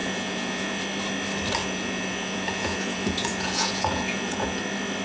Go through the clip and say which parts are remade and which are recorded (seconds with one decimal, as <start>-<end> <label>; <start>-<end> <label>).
0.0-0.8 remade; 0.8-1.6 recorded; 1.6-4.6 remade; 4.6-5.0 recorded